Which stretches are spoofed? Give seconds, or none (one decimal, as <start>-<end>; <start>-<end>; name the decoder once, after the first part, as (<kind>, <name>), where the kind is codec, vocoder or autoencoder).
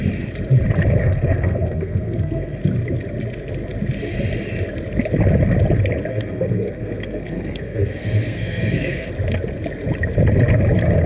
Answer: 1.0-2.6 (codec, SNAC); 6.1-9.1